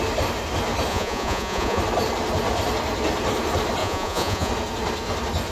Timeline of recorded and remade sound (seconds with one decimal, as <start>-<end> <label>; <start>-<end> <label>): 0.0-0.9 recorded; 0.9-1.8 remade; 1.8-3.8 recorded; 3.8-4.5 remade; 4.5-5.5 recorded